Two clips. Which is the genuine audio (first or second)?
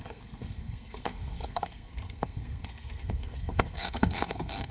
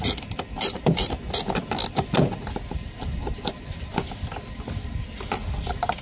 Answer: second